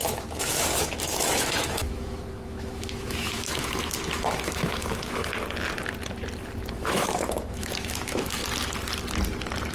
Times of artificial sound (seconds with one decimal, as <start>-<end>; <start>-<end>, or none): 0.0-5.3; 6.7-8.4